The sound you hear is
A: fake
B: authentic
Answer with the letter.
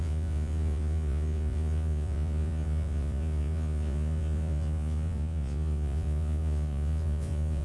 A